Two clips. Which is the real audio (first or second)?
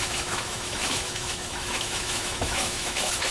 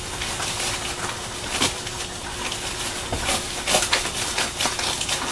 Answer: second